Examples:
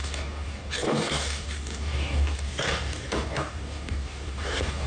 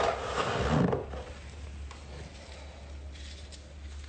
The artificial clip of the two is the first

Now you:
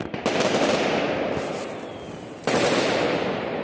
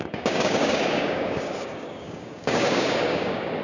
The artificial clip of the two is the second